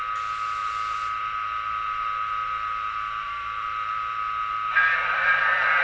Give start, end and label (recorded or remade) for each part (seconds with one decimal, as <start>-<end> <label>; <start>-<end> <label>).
0.0-0.6 recorded; 0.6-4.1 remade; 4.1-4.7 recorded; 4.7-5.8 remade

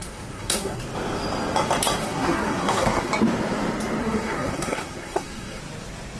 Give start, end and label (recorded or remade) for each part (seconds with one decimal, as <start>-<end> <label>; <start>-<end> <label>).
0.0-0.8 remade; 0.8-2.0 recorded; 2.0-3.1 remade; 3.1-4.0 recorded; 4.0-5.6 remade; 5.6-6.2 recorded

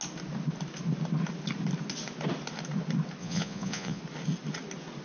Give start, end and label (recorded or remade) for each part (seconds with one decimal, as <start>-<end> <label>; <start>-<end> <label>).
0.0-3.2 recorded; 3.2-4.0 remade; 4.0-5.0 recorded

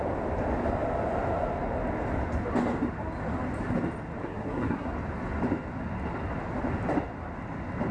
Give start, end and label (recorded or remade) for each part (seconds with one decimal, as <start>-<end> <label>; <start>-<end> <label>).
0.0-4.2 recorded; 4.2-4.9 remade; 4.9-7.9 recorded

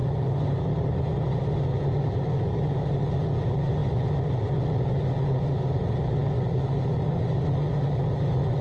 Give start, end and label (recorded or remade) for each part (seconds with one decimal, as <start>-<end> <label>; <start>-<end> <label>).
0.0-8.6 recorded

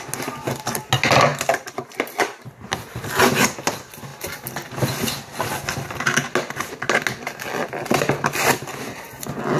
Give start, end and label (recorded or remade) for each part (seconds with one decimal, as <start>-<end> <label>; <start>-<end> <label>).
0.0-9.6 recorded

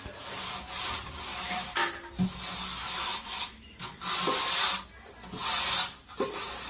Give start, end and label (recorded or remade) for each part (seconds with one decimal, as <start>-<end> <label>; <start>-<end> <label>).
0.0-1.3 recorded; 1.3-1.9 remade; 1.9-2.8 recorded; 2.8-4.1 remade; 4.1-6.7 recorded

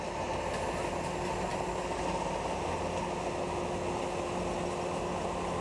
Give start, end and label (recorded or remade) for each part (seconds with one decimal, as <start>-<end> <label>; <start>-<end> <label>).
0.0-5.6 recorded